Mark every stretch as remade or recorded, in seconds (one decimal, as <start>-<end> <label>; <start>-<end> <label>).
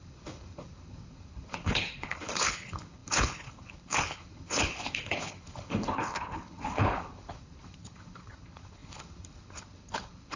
0.0-10.4 remade